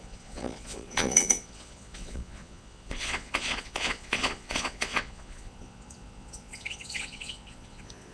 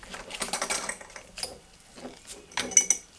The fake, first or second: first